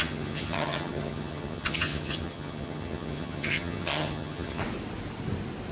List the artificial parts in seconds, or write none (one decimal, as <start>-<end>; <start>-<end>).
0.0-4.6